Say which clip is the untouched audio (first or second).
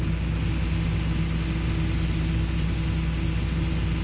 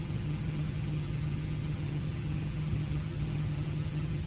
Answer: first